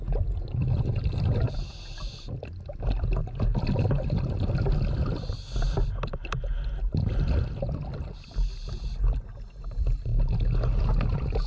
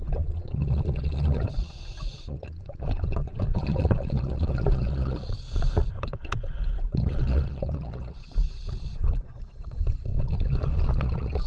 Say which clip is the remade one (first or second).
second